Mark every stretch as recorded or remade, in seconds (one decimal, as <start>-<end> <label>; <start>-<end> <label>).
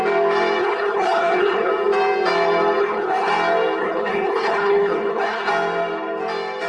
0.0-0.6 recorded; 0.6-1.7 remade; 1.7-2.8 recorded; 2.8-3.3 remade; 3.3-3.8 recorded; 3.8-5.5 remade; 5.5-6.7 recorded